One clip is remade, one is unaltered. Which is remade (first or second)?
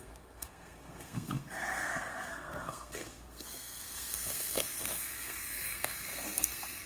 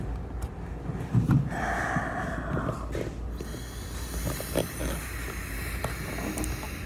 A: first